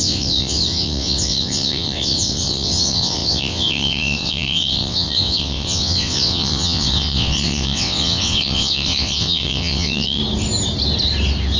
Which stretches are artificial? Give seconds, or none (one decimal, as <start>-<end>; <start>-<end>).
0.0-10.2